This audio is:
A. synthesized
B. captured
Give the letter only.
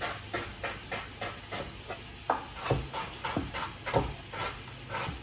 B